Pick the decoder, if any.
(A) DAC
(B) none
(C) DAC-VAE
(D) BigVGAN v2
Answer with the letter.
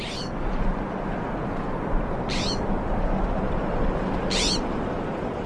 B